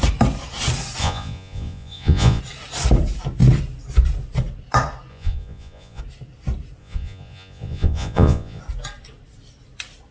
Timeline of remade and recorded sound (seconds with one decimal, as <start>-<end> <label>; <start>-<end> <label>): 0.0-1.0 recorded; 1.0-2.4 remade; 2.4-5.1 recorded; 5.1-6.0 remade; 6.0-6.8 recorded; 6.8-8.6 remade; 8.6-10.1 recorded